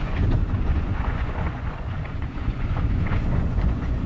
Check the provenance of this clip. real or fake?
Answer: fake